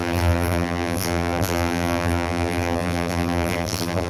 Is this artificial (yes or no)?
yes